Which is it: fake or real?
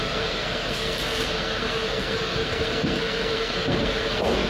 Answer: fake